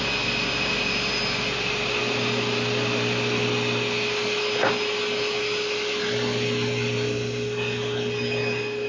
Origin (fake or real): real